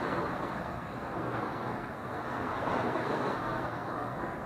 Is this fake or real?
fake